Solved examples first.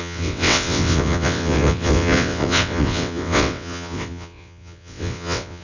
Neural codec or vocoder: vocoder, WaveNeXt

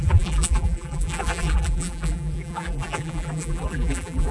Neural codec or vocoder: vocoder, BigVGAN v2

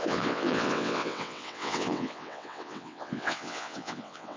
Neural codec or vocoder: vocoder, WaveNeXt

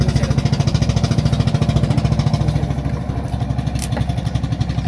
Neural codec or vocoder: none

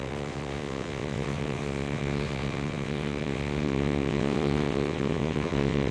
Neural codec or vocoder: vocoder, WaveNeXt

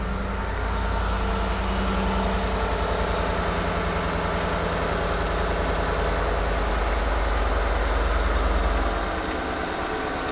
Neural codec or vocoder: none